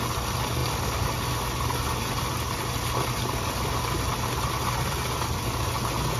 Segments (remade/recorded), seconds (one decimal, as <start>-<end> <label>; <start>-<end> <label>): 0.0-6.2 recorded